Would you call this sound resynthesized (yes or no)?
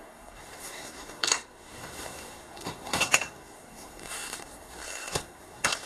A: yes